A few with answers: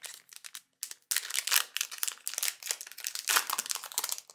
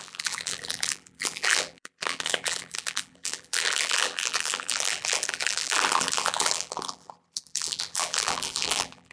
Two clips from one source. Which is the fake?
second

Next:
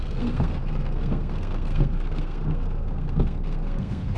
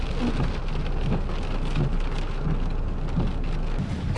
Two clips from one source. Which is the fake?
first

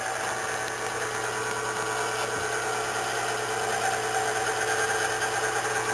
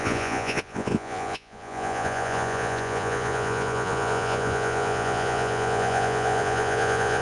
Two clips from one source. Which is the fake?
second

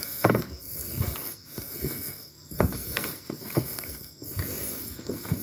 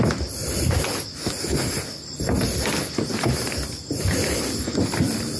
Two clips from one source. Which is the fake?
first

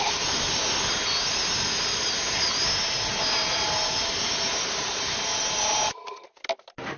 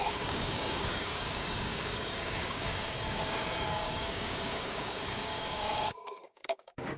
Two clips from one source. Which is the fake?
second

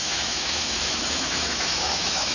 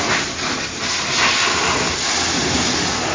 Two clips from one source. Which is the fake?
first